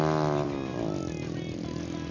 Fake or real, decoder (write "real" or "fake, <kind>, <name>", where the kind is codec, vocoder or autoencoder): real